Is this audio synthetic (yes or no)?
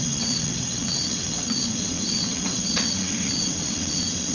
yes